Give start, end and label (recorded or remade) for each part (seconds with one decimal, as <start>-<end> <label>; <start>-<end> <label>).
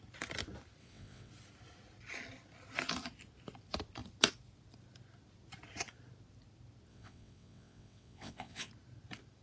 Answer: 0.0-0.8 recorded; 0.8-1.3 remade; 1.3-6.9 recorded; 6.9-8.7 remade; 8.7-9.4 recorded